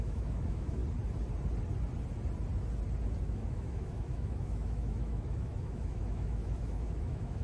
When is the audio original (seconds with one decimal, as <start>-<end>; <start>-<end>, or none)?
0.8-3.2